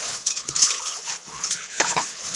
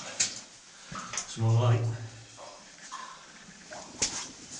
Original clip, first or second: second